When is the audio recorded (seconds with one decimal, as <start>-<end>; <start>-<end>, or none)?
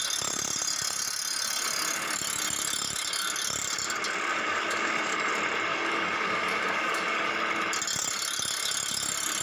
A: 0.0-4.3; 5.3-5.7; 7.3-9.4